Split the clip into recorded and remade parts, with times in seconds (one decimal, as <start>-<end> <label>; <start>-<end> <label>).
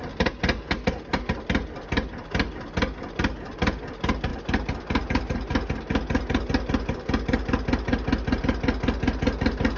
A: 0.0-9.8 recorded